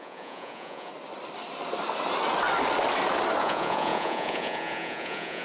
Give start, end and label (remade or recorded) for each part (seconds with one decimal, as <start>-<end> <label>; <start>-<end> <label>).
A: 0.0-0.9 remade; 0.9-3.4 recorded; 3.4-5.4 remade

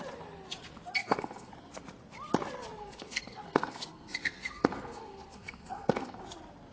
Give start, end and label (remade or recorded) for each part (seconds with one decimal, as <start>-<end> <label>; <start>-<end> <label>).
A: 0.0-1.0 recorded; 1.0-1.5 remade; 1.5-2.8 recorded; 2.8-6.2 remade; 6.2-6.7 recorded